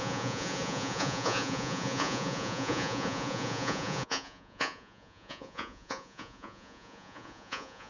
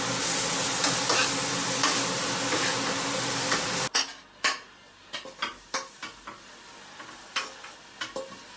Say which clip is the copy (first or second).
first